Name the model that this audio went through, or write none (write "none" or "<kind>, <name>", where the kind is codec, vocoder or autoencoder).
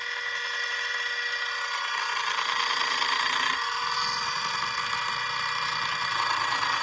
none